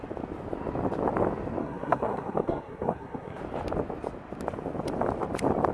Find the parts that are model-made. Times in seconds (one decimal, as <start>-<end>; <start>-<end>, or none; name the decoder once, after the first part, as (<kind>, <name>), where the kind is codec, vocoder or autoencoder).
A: 1.6-3.4 (codec, SNAC)